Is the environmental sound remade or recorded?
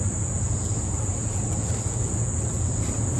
remade